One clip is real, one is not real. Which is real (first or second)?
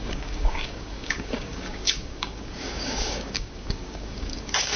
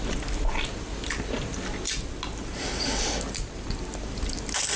second